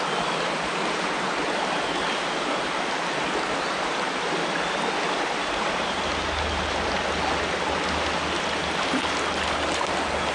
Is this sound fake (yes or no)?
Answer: no